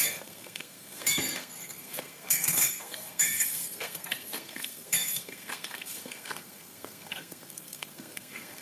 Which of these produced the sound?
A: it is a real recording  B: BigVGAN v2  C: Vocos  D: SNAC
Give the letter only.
D